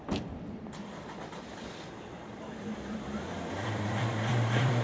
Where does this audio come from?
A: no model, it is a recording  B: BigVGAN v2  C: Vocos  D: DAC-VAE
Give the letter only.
B